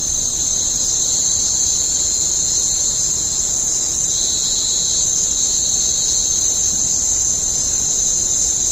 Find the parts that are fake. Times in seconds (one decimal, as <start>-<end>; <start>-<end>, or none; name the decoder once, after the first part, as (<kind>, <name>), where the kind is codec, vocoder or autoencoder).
0.0-1.1 (vocoder, BigVGAN v2)